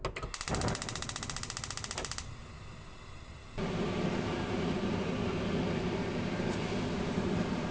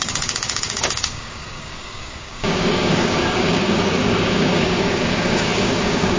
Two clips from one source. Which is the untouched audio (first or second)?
first